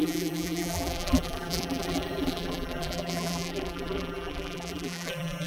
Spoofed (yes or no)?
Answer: yes